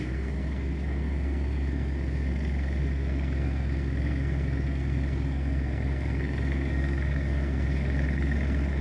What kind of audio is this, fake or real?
fake